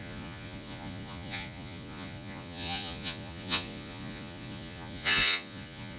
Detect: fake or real fake